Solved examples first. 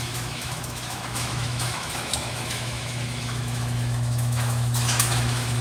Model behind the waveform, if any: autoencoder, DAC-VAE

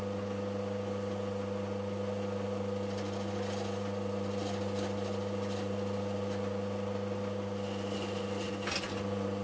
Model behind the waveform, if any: none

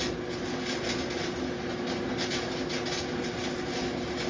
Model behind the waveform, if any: none